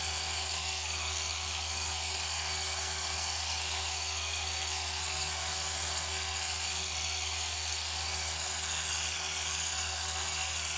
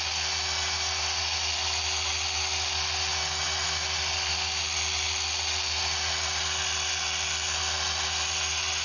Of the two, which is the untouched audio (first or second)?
second